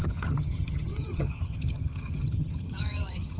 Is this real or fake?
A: fake